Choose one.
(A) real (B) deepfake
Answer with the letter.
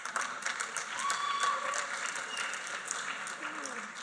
B